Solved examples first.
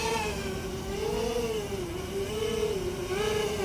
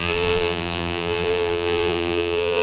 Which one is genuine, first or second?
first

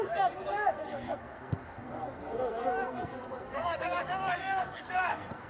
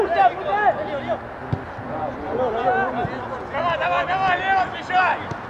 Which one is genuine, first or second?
second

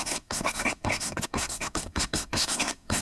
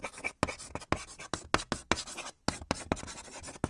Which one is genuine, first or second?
second